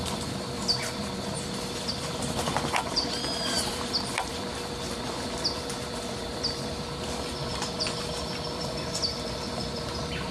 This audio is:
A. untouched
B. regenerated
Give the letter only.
B